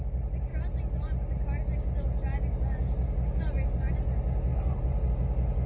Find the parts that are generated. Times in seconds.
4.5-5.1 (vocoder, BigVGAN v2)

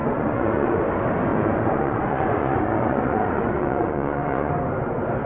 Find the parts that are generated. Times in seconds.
0.0-0.8 (vocoder, Vocos); 1.3-4.5

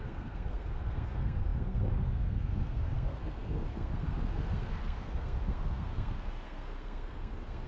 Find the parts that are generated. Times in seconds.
0.0-7.7 (codec, SNAC)

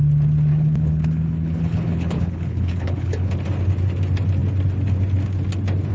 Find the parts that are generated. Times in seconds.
0.5-3.3 (codec, HILCodec)

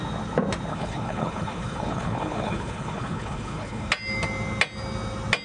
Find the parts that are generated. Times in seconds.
0.7-3.9 (codec, HILCodec)